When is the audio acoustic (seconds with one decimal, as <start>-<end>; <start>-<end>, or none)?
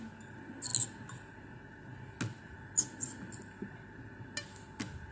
0.0-5.1